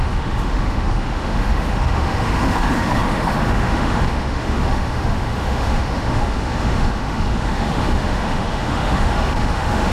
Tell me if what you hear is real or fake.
fake